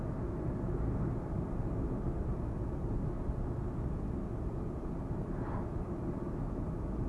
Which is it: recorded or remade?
recorded